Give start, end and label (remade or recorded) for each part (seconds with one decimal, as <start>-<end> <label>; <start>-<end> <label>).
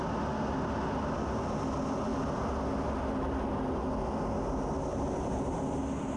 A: 0.0-4.9 recorded; 4.9-5.6 remade; 5.6-6.2 recorded